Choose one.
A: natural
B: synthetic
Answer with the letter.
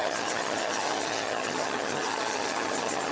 B